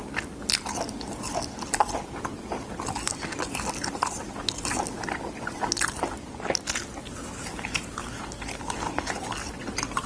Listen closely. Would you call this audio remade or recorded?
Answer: recorded